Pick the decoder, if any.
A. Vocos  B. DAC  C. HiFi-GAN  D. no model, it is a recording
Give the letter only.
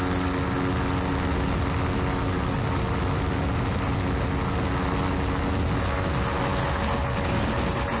D